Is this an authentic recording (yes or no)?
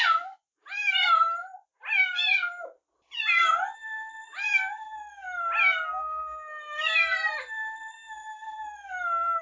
yes